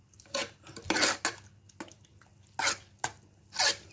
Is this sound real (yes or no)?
yes